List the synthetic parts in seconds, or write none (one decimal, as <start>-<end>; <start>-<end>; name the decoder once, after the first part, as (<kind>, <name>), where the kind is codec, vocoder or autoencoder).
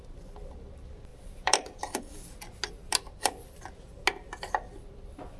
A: 1.1-2.0 (vocoder, BigVGAN v2); 2.8-3.7